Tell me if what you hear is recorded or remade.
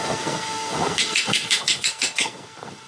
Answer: remade